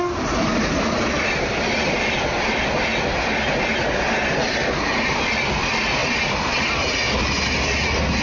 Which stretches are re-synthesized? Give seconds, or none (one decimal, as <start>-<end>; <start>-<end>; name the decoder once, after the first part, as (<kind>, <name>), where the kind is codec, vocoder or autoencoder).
none